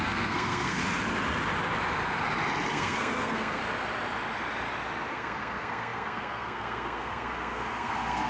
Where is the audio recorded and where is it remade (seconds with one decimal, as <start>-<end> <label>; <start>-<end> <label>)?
0.0-0.8 remade; 0.8-2.7 recorded; 2.7-3.6 remade; 3.6-5.1 recorded; 5.1-8.3 remade